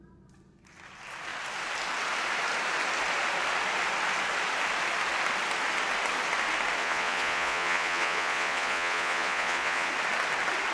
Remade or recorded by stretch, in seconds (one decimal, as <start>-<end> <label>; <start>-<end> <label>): 0.0-6.8 recorded; 6.8-9.9 remade; 9.9-10.7 recorded